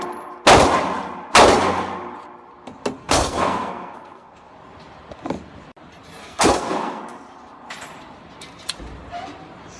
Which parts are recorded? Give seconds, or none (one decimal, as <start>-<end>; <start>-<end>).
0.0-3.0; 4.5-6.2; 7.0-9.8

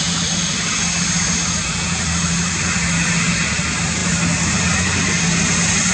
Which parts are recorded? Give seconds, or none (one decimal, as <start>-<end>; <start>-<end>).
0.0-5.9

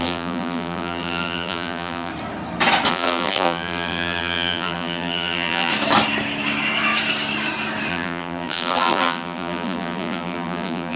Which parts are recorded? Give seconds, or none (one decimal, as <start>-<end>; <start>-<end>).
2.1-2.9; 5.7-7.9

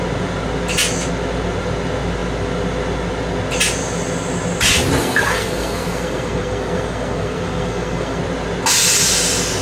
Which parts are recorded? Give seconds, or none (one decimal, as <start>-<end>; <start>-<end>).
0.0-5.0; 8.2-9.6